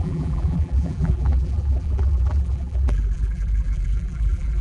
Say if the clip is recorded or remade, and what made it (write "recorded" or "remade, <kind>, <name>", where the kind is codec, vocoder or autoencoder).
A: remade, vocoder, BigVGAN v2